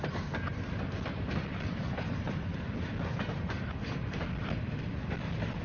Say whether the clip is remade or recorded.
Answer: remade